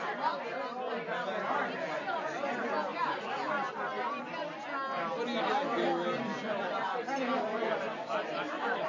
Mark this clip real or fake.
real